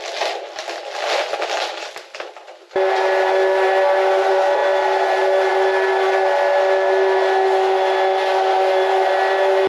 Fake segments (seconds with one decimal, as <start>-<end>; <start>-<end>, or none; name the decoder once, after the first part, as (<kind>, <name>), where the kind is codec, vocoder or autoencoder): none